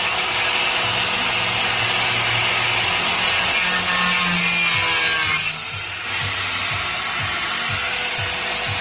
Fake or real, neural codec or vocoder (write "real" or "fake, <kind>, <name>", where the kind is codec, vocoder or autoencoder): real